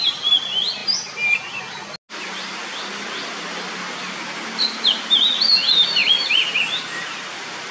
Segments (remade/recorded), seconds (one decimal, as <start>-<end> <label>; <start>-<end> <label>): 0.0-7.7 recorded